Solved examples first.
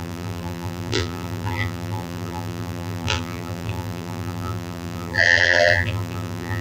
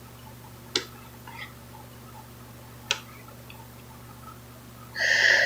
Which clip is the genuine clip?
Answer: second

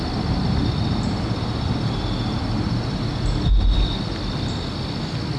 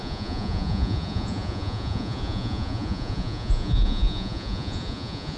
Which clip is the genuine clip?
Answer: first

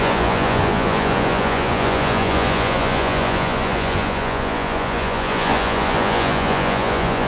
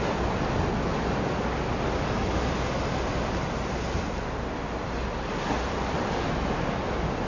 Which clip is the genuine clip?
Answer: second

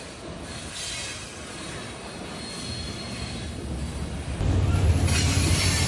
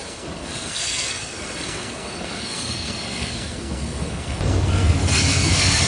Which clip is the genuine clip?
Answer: first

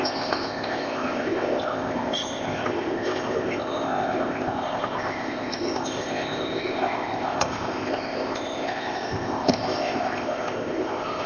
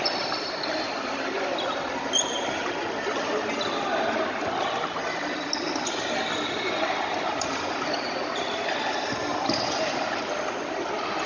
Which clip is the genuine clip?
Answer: second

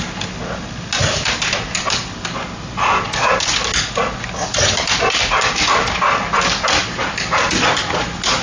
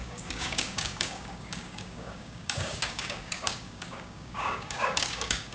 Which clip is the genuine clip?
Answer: first